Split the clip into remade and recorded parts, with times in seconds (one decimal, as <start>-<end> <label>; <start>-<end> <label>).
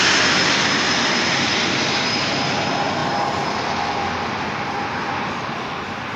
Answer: 0.0-6.2 recorded